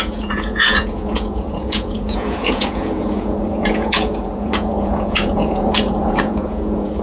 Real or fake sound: fake